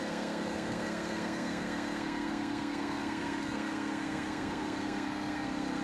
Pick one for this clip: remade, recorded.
remade